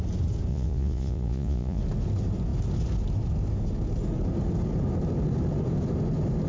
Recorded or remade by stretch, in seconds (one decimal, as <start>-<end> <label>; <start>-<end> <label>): 0.0-0.5 recorded; 0.5-1.8 remade; 1.8-6.5 recorded

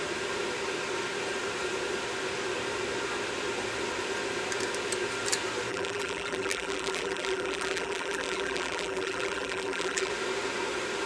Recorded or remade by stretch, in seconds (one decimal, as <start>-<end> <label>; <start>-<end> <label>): 0.0-5.7 recorded; 5.7-10.1 remade; 10.1-11.1 recorded

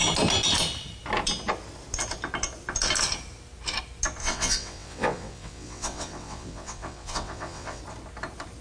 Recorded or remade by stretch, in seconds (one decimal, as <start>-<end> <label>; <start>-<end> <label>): 0.0-4.2 recorded; 4.2-7.8 remade; 7.8-8.6 recorded

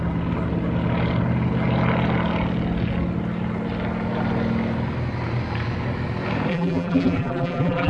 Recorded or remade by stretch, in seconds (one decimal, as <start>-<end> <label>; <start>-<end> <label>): 0.0-6.5 recorded; 6.5-7.9 remade

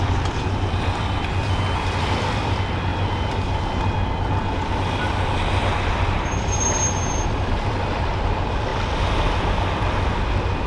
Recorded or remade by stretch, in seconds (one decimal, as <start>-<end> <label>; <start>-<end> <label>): 0.0-2.9 remade; 2.9-6.0 recorded; 6.0-8.7 remade; 8.7-10.7 recorded

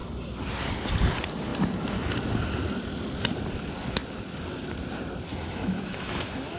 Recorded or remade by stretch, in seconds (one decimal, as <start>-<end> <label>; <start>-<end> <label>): 0.0-5.3 recorded; 5.3-6.6 remade

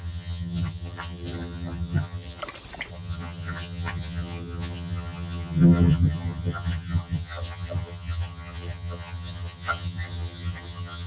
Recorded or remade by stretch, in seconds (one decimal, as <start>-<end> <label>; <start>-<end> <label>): 0.0-2.4 remade; 2.4-2.9 recorded; 2.9-11.1 remade

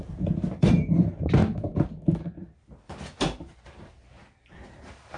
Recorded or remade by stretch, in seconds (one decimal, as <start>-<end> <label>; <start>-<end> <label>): 0.0-1.4 remade; 1.4-2.1 recorded; 2.1-5.2 remade